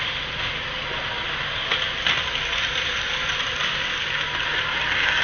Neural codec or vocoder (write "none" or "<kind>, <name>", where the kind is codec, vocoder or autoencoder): none